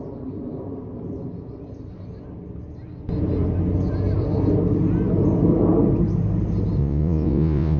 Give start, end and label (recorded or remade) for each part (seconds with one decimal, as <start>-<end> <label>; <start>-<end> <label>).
0.0-6.8 recorded; 6.8-7.8 remade